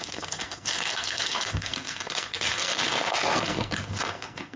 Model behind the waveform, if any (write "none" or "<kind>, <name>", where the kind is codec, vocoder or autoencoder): codec, SNAC